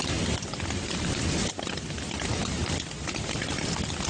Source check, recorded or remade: recorded